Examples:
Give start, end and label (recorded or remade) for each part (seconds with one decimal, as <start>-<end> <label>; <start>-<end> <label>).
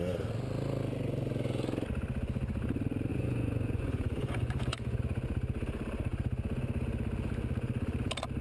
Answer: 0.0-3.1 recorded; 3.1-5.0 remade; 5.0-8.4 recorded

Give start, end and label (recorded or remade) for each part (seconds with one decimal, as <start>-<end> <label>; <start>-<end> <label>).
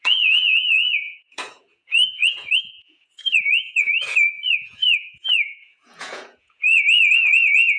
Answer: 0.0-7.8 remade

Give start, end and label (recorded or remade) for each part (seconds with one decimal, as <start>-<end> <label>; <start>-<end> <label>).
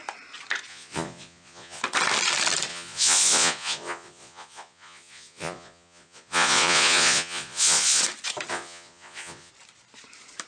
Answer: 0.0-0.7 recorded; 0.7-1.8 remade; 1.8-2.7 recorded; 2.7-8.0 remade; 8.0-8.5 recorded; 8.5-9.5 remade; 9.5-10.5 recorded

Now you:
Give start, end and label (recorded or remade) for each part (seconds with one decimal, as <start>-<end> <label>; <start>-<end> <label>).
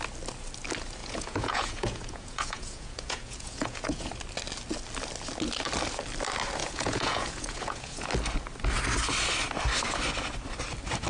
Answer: 0.0-1.0 recorded; 1.0-4.1 remade; 4.1-6.6 recorded; 6.6-8.1 remade; 8.1-11.1 recorded